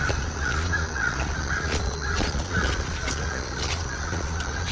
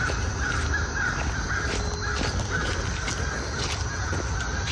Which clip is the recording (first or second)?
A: second